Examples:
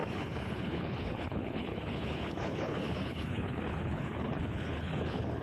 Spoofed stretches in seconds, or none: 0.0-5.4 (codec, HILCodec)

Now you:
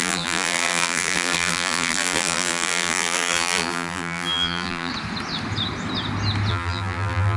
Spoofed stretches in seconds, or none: 0.0-4.9 (vocoder, BigVGAN v2); 6.5-7.4

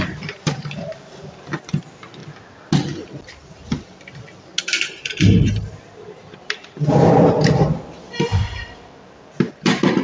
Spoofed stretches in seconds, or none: 0.0-2.2 (vocoder, BigVGAN v2); 6.9-10.0

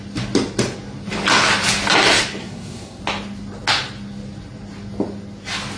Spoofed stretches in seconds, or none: 2.4-3.0 (codec, SNAC)